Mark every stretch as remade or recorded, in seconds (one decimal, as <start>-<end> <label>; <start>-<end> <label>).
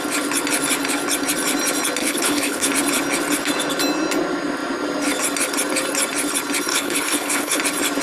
0.0-2.0 recorded; 2.0-2.7 remade; 2.7-6.7 recorded; 6.7-7.6 remade; 7.6-8.0 recorded